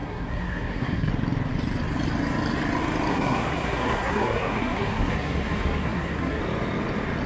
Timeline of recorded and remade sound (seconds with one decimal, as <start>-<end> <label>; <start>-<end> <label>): 0.0-1.1 remade; 1.1-3.1 recorded; 3.1-6.4 remade; 6.4-7.3 recorded